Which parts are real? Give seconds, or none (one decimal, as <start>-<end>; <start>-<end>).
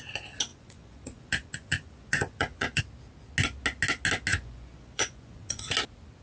0.0-0.5; 2.8-4.3; 5.6-6.2